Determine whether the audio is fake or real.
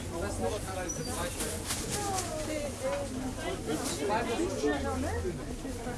real